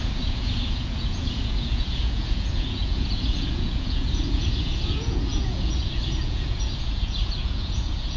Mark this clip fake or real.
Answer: fake